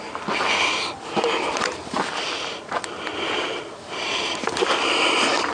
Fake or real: real